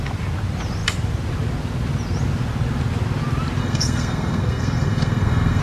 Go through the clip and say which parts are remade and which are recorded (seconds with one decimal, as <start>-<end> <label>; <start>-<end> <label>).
0.0-3.6 recorded; 3.6-5.6 remade